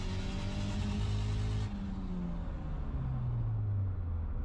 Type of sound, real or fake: real